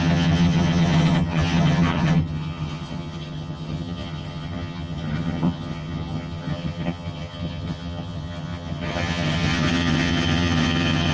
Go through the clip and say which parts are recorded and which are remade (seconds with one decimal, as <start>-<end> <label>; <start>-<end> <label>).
0.0-11.1 remade